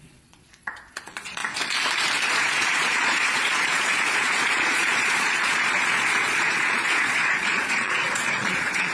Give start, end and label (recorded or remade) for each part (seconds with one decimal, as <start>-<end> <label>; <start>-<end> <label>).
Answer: 0.0-1.4 remade; 1.4-2.3 recorded; 2.3-8.9 remade